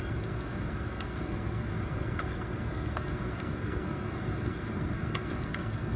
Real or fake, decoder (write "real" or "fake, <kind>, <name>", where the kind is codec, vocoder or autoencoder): fake, codec, SNAC